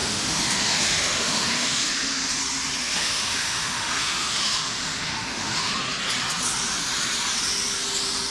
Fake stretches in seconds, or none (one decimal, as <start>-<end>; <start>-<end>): 0.0-2.4; 2.8-5.7